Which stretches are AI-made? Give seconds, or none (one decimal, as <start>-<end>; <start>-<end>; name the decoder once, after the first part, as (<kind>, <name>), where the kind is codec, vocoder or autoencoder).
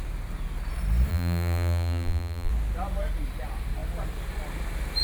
1.1-2.5 (vocoder, BigVGAN v2)